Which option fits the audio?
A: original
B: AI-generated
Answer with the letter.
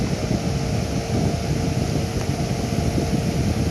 A